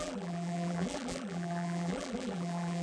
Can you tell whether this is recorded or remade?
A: remade